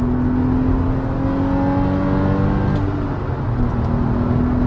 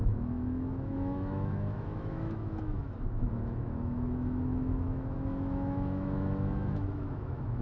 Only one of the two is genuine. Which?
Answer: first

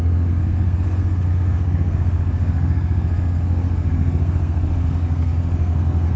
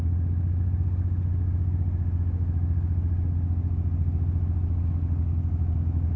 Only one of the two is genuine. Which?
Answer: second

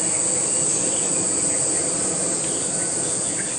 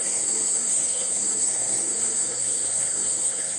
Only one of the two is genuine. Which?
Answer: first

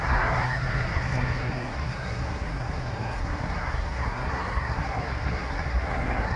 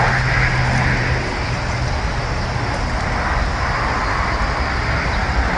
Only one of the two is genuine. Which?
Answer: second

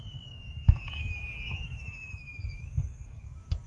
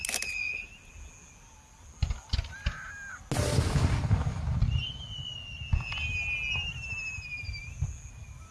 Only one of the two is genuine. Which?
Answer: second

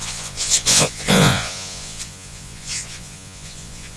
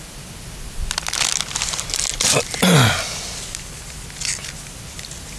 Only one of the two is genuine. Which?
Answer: second